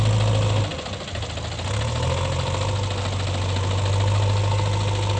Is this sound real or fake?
real